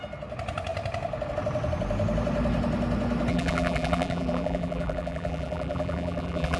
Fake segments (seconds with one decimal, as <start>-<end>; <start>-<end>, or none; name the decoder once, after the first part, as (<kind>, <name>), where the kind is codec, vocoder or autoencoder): 3.3-6.6 (vocoder, BigVGAN v2)